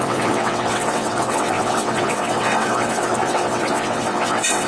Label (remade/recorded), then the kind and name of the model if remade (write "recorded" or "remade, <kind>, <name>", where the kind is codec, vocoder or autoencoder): remade, vocoder, WaveNeXt